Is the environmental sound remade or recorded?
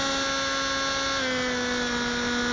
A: recorded